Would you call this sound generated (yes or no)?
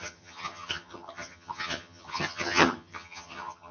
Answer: yes